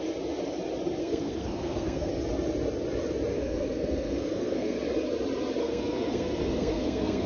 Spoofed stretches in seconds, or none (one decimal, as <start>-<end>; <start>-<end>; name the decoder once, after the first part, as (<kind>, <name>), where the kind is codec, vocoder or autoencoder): 1.0-2.1 (codec, SNAC); 3.3-4.8; 5.6-7.3